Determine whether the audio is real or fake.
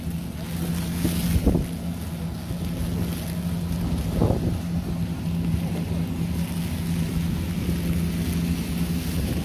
real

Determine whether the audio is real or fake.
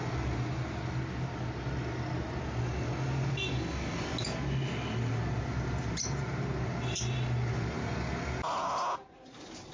real